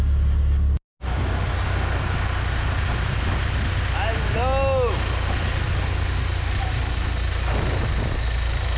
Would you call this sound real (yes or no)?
yes